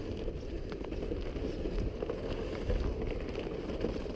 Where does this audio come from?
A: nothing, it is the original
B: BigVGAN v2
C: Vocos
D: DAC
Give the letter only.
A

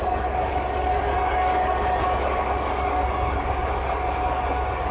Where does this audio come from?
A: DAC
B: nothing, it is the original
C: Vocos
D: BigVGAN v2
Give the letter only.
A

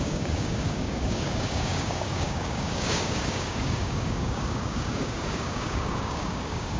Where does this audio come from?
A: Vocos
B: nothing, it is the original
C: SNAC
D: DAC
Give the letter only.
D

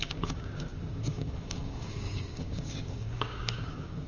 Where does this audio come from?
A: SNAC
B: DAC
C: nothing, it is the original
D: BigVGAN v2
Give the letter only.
B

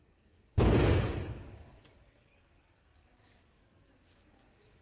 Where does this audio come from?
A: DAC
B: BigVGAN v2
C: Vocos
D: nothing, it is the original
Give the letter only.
A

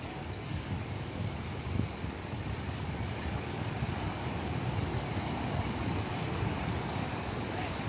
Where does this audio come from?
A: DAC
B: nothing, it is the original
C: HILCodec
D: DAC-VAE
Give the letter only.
A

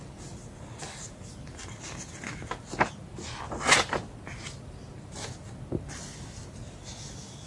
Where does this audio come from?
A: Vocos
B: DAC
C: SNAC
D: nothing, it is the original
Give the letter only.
D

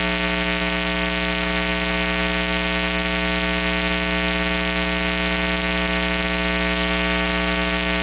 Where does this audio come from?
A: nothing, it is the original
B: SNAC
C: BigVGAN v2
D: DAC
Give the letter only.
A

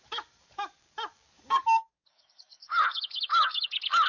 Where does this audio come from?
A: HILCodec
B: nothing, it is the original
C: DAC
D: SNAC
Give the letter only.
C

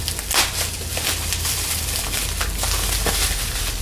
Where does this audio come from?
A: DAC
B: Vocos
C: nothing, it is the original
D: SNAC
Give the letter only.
C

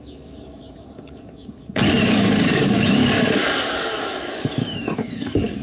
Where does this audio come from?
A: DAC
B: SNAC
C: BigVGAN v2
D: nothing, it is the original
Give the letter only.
A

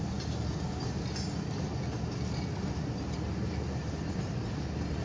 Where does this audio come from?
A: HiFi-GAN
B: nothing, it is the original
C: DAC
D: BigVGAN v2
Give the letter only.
B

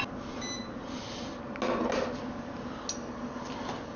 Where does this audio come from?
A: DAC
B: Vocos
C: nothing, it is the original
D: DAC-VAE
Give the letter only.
C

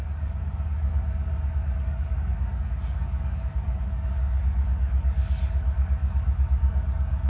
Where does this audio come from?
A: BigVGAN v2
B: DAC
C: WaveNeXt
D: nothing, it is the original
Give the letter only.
B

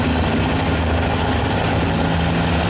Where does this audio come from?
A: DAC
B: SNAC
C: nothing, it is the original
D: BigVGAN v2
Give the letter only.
C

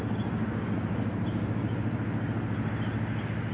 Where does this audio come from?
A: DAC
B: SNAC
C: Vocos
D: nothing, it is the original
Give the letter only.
D